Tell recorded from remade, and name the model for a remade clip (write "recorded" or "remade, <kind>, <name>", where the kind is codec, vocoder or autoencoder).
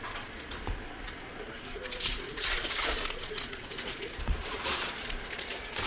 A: remade, vocoder, Vocos